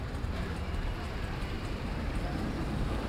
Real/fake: fake